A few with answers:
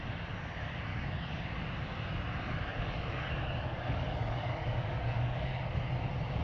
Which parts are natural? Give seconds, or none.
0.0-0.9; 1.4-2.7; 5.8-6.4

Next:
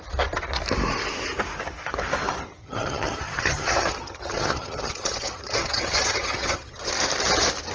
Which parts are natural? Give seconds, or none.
0.0-2.6; 6.9-7.7

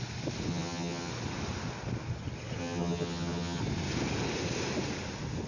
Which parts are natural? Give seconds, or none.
0.0-0.5; 1.1-2.6; 3.6-5.5

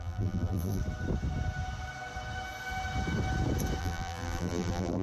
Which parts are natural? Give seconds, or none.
0.8-3.8

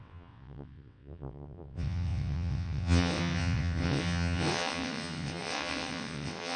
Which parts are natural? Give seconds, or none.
none